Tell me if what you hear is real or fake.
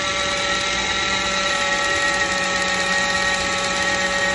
real